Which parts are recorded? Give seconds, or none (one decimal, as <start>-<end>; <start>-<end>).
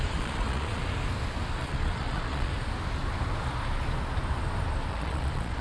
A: 0.8-1.6; 2.5-4.9